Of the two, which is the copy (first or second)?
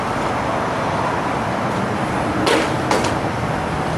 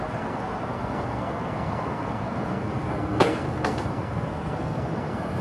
second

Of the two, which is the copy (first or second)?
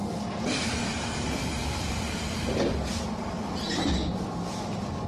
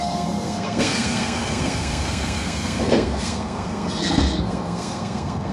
second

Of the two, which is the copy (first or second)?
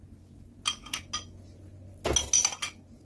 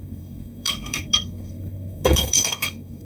second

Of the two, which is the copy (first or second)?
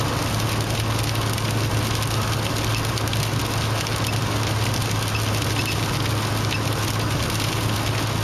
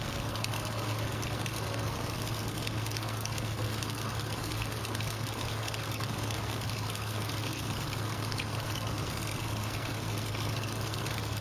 second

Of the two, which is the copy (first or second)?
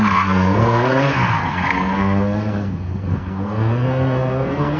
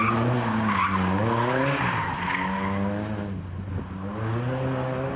first